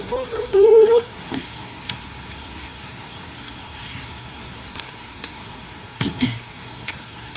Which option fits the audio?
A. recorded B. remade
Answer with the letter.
B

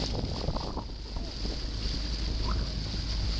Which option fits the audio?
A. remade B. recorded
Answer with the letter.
B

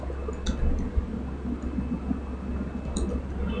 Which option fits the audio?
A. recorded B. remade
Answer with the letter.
A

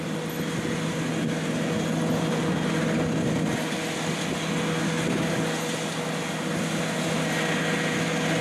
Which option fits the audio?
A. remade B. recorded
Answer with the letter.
B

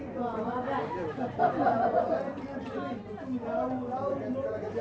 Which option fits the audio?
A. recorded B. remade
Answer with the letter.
A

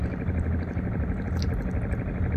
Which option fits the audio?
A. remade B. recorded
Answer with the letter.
B